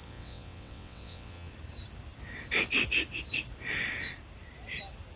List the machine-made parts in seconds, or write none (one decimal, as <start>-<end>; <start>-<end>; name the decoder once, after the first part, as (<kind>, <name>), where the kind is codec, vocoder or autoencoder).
0.0-1.5 (vocoder, WaveNeXt)